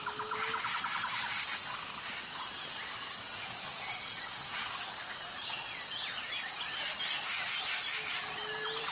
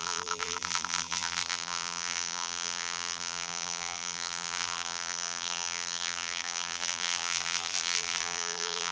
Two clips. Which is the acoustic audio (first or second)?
first